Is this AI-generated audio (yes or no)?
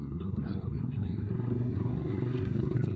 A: yes